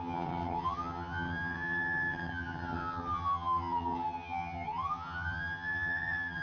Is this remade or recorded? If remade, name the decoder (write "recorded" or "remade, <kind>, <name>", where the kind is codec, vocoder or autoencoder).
remade, vocoder, HiFi-GAN